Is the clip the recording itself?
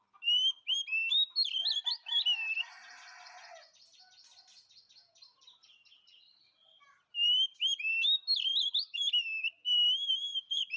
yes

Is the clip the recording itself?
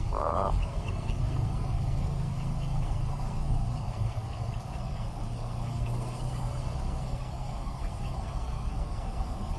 no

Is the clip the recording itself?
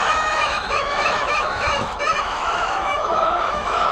no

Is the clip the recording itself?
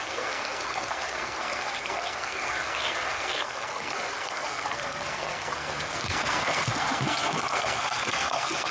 no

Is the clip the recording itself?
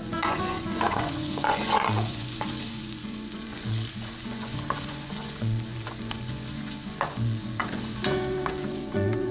no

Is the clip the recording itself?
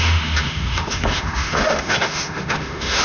no